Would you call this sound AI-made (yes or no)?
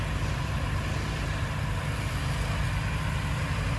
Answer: no